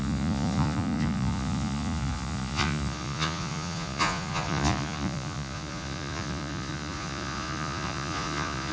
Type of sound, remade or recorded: remade